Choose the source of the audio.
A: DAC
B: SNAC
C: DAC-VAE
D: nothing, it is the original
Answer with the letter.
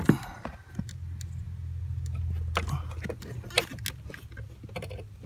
D